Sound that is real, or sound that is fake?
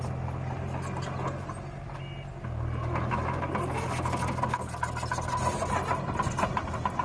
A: real